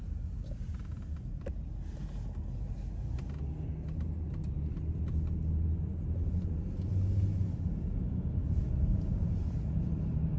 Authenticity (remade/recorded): recorded